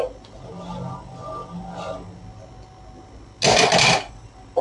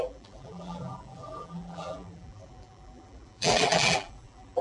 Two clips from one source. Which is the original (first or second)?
first